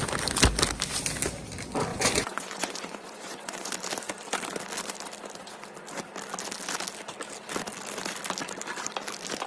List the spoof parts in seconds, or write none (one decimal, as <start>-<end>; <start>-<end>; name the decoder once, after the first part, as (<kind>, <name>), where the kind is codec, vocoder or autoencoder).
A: 1.9-3.7 (vocoder, Vocos)